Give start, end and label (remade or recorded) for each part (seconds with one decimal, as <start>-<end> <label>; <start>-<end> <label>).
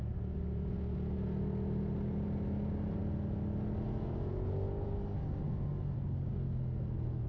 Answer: 0.0-7.3 recorded